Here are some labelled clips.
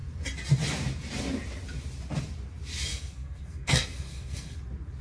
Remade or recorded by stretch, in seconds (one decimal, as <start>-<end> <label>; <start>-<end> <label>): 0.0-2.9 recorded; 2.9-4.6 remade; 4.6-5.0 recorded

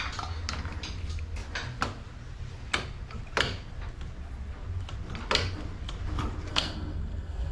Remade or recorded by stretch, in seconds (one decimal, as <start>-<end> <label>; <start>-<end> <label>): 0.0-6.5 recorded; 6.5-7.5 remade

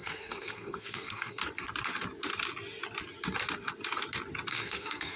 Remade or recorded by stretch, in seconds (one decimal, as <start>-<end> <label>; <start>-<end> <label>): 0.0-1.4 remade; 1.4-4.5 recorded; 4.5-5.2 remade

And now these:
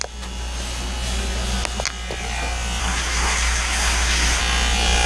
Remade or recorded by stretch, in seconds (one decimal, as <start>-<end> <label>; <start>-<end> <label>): 0.0-2.8 recorded; 2.8-4.4 remade; 4.4-5.1 recorded

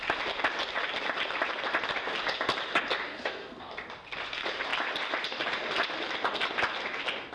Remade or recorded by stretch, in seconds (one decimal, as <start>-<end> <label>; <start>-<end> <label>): 0.0-3.1 recorded; 3.1-3.7 remade; 3.7-7.3 recorded

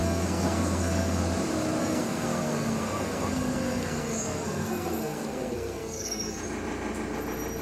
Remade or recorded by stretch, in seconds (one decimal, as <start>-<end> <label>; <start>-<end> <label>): 0.0-1.2 remade; 1.2-1.8 recorded; 1.8-6.4 remade; 6.4-7.6 recorded

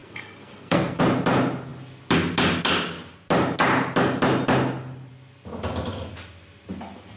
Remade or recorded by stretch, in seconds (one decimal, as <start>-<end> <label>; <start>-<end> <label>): 0.0-1.0 remade; 1.0-7.2 recorded

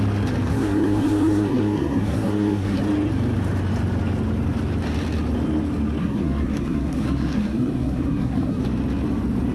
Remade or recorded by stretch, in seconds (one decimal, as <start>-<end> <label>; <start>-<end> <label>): 0.0-0.5 recorded; 0.5-2.8 remade; 2.8-6.0 recorded; 6.0-8.6 remade; 8.6-9.5 recorded